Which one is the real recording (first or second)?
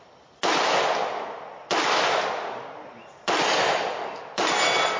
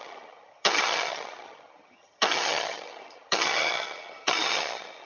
first